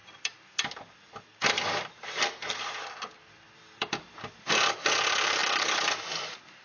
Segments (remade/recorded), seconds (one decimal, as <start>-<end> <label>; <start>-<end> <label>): 0.0-0.7 remade; 0.7-3.2 recorded; 3.2-4.5 remade; 4.5-5.4 recorded; 5.4-6.0 remade; 6.0-6.6 recorded